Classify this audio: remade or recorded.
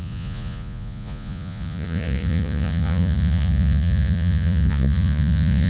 remade